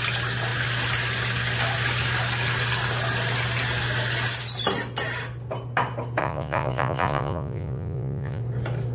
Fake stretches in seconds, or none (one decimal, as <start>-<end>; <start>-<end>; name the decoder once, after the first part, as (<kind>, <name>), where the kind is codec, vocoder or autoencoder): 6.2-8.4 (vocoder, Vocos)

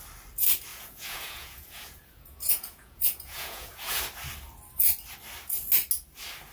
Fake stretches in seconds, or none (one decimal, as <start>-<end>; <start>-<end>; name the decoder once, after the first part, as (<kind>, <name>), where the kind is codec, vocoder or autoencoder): 0.7-4.0 (vocoder, Vocos)

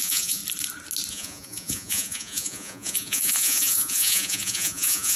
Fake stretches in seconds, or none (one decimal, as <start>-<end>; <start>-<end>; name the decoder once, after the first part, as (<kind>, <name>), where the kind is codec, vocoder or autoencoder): 0.0-0.4 (vocoder, Vocos); 1.1-5.2

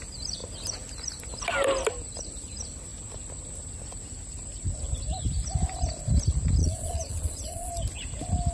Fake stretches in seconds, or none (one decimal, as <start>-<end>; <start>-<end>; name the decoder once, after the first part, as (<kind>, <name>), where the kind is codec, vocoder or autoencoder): 6.6-7.7 (vocoder, Vocos)

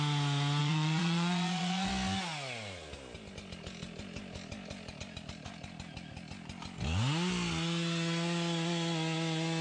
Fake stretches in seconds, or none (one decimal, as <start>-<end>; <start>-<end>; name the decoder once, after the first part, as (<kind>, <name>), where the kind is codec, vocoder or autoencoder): 0.6-1.9 (vocoder, Vocos)

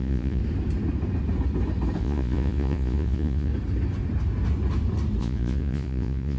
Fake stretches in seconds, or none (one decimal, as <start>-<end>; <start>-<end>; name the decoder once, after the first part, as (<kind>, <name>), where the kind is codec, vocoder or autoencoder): 0.0-0.4 (vocoder, Vocos); 2.0-3.5; 5.2-6.4

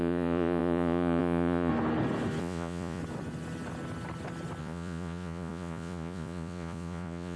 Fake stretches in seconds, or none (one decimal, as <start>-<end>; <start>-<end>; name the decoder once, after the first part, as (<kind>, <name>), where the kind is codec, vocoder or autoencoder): 0.0-1.7 (vocoder, Vocos); 2.4-3.0; 4.6-7.4

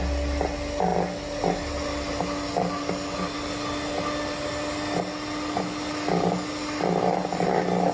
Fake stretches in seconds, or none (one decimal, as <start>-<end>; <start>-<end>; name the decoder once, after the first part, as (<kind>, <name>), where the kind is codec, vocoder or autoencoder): none